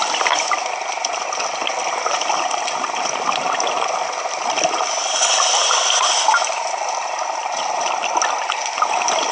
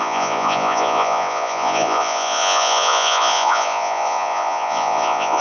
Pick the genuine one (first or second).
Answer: first